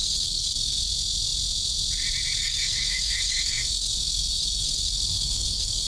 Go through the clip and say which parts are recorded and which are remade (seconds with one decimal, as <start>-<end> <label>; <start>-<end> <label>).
0.0-0.8 remade; 0.8-2.4 recorded; 2.4-5.9 remade